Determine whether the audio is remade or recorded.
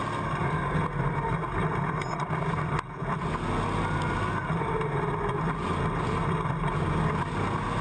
recorded